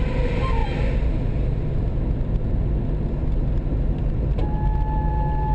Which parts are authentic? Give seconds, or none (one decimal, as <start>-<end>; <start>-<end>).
0.0-5.5